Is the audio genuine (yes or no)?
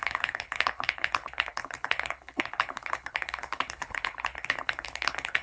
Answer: no